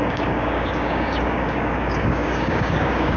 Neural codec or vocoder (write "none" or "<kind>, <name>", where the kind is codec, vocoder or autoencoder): codec, DAC